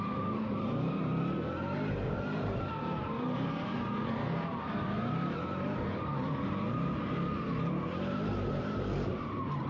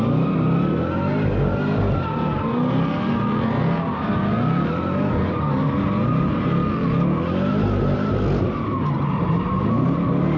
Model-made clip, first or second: first